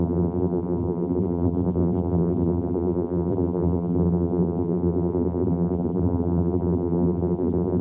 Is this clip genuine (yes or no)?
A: no